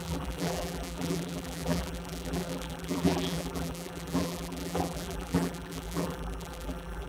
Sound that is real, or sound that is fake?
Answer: fake